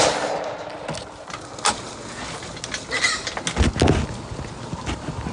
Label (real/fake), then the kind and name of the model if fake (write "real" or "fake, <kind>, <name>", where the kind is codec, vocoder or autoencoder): real